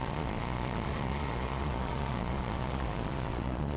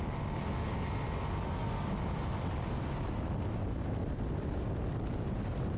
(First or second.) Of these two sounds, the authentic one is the second